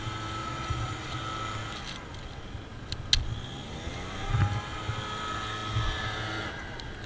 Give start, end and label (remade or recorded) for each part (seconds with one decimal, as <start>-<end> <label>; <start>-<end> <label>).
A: 0.0-0.4 recorded; 0.4-1.2 remade; 1.2-7.1 recorded